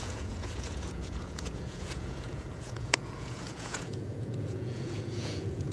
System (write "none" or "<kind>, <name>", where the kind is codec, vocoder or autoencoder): vocoder, Vocos